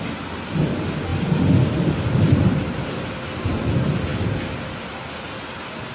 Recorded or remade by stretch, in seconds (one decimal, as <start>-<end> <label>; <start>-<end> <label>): 0.0-5.9 recorded